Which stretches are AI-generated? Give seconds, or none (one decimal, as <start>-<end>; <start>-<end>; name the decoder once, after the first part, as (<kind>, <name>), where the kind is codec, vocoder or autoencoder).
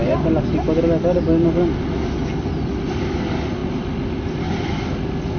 none